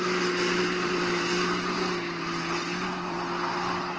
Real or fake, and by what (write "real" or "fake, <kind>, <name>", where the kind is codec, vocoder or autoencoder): real